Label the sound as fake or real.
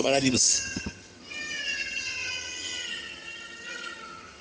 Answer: fake